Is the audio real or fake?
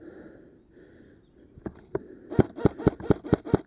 real